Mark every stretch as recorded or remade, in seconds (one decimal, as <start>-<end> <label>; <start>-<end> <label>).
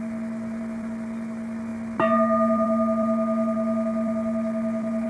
0.0-5.1 recorded